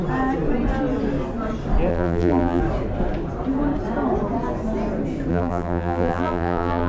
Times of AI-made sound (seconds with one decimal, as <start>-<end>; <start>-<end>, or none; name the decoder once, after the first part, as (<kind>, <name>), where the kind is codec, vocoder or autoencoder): 1.9-2.6 (vocoder, BigVGAN v2); 5.3-6.9